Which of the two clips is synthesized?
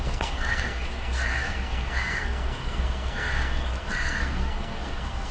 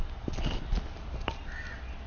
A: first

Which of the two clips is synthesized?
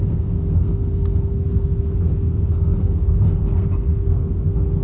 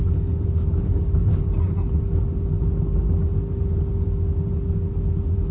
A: first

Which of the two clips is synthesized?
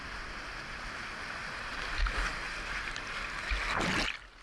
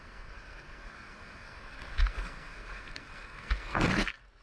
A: second